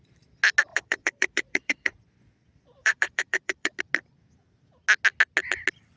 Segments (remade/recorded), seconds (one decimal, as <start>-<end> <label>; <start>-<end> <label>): 0.0-0.7 recorded; 0.7-3.8 remade; 3.8-6.0 recorded